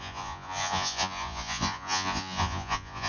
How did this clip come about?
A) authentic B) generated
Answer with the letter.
B